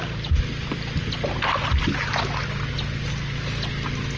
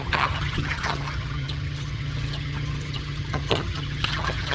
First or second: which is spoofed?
second